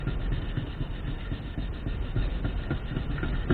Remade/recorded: recorded